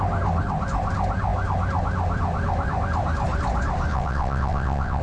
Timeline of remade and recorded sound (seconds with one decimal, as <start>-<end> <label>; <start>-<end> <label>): 0.0-3.9 recorded; 3.9-5.0 remade